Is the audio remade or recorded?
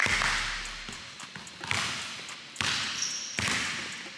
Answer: recorded